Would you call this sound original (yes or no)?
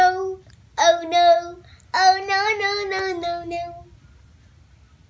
yes